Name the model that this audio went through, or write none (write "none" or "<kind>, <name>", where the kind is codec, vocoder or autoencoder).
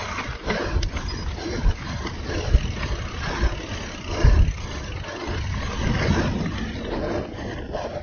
none